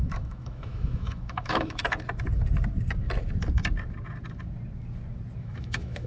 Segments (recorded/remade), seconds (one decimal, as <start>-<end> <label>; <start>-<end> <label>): 0.0-1.8 remade; 1.8-5.4 recorded; 5.4-6.1 remade